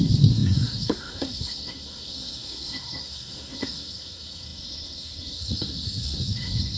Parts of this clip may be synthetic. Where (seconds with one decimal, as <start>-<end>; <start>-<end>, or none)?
0.0-6.8